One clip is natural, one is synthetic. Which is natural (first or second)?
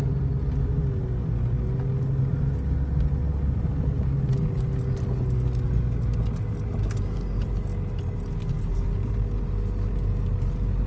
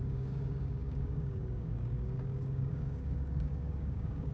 first